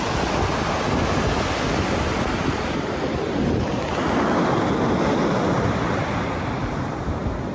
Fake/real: real